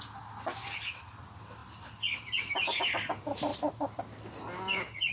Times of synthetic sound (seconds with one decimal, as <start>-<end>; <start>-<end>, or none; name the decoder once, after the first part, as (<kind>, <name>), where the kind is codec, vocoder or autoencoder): 3.5-4.0 (vocoder, BigVGAN v2)